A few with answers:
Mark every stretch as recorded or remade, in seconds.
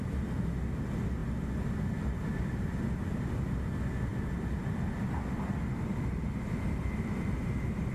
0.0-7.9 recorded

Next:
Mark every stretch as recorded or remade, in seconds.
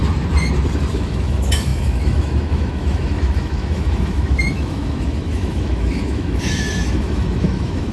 0.0-0.9 recorded; 0.9-7.9 remade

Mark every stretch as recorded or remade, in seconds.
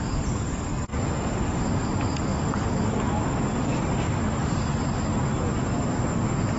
0.0-2.3 recorded; 2.3-3.2 remade; 3.2-6.6 recorded